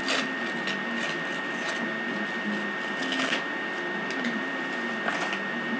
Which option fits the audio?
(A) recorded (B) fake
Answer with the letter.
A